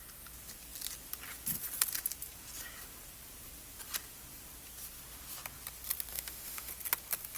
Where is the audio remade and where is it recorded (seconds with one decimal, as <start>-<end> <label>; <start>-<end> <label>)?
0.0-6.1 recorded; 6.1-6.7 remade; 6.7-7.4 recorded